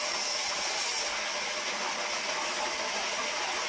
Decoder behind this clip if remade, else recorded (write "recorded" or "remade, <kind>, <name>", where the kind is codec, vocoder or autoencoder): recorded